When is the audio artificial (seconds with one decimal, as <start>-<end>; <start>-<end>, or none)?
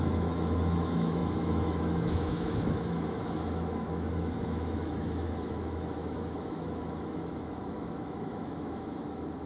0.0-9.5